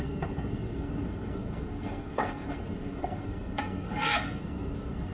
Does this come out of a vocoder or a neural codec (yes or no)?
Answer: yes